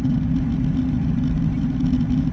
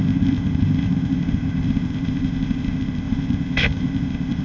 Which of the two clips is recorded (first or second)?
first